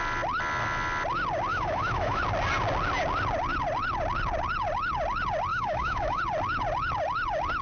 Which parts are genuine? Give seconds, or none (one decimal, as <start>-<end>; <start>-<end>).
0.0-1.5; 2.2-5.5; 6.2-7.6